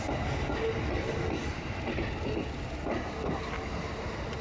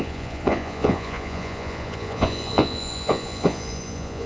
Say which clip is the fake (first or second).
second